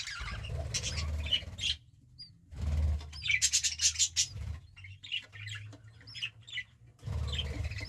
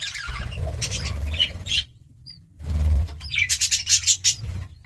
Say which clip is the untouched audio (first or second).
first